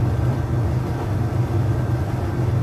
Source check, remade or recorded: recorded